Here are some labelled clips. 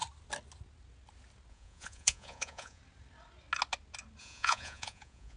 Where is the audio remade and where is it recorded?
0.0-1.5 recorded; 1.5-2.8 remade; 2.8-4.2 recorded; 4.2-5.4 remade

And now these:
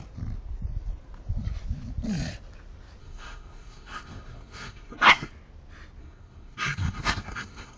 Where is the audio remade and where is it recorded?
0.0-3.0 recorded; 3.0-5.3 remade; 5.3-6.0 recorded; 6.0-7.8 remade